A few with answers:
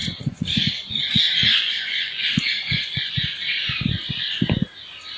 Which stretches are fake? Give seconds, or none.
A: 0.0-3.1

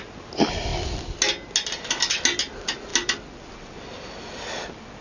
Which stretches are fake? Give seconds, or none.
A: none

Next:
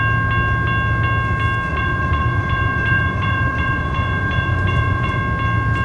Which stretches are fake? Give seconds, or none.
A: 1.7-5.2

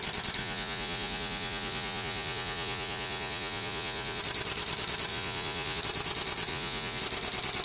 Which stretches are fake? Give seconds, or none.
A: 0.4-4.2; 5.1-5.8; 6.5-7.0